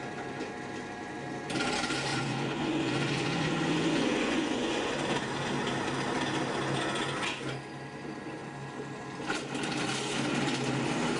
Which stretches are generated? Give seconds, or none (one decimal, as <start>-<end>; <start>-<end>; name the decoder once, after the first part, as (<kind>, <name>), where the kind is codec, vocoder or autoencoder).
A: 2.1-4.9 (vocoder, Vocos)